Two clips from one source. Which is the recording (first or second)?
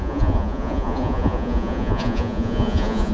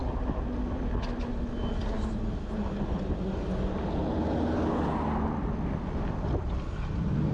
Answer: second